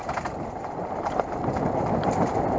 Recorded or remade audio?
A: remade